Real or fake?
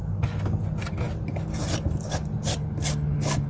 real